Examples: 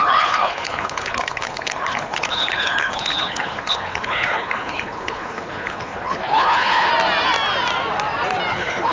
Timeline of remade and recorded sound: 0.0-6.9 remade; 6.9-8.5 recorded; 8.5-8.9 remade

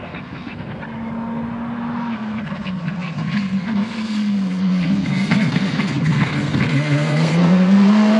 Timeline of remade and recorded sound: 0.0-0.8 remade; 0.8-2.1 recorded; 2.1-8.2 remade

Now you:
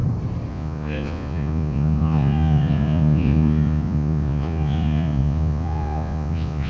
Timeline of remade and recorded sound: 0.0-0.5 recorded; 0.5-6.7 remade

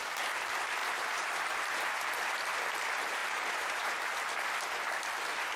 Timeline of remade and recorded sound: 0.0-0.8 recorded; 0.8-1.4 remade; 1.4-3.2 recorded; 3.2-3.9 remade; 3.9-5.6 recorded